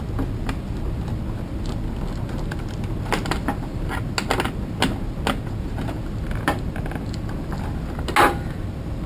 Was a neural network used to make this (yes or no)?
no